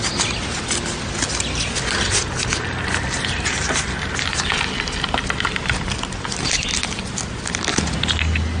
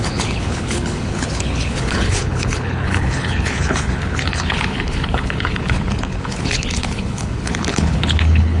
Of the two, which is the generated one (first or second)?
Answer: second